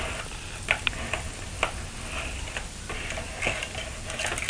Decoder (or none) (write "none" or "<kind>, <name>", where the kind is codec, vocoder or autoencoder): none